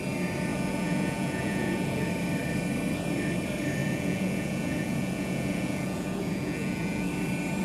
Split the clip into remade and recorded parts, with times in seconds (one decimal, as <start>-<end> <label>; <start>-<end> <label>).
0.0-0.5 recorded; 0.5-2.1 remade; 2.1-3.8 recorded; 3.8-7.1 remade; 7.1-7.6 recorded